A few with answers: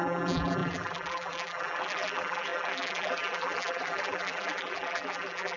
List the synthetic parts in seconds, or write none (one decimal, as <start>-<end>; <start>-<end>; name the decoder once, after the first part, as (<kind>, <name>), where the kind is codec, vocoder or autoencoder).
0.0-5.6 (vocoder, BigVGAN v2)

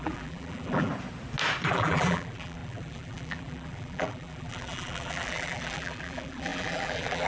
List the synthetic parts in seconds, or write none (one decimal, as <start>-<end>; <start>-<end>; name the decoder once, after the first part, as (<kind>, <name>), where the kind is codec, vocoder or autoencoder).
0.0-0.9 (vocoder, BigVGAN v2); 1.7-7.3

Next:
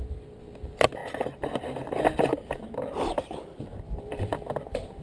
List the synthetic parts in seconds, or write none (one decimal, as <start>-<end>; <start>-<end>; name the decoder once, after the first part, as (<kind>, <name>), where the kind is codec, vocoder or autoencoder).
0.0-1.0 (vocoder, BigVGAN v2); 4.0-5.0

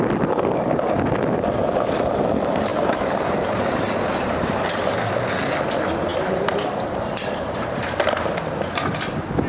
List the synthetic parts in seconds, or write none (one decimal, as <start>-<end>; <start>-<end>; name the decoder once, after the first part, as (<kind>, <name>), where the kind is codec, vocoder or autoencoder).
2.7-5.1 (vocoder, BigVGAN v2); 6.1-7.8

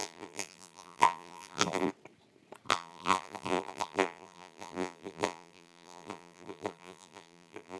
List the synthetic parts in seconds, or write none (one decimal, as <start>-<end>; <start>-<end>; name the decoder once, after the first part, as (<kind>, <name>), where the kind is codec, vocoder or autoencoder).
0.0-1.9 (vocoder, BigVGAN v2); 2.7-7.8

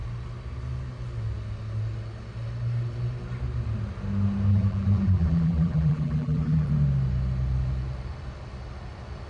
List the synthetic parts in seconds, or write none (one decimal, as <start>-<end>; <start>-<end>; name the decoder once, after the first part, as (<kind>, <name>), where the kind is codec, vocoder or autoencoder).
4.5-6.7 (vocoder, BigVGAN v2)